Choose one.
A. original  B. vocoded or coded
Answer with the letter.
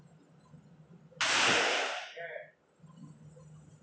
A